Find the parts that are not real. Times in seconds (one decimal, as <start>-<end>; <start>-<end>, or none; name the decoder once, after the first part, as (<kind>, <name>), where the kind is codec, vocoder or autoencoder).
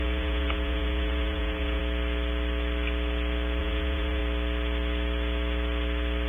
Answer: 0.0-1.8 (vocoder, Vocos); 3.6-4.2